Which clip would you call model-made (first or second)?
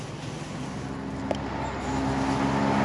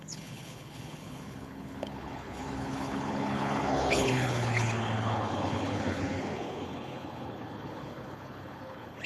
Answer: second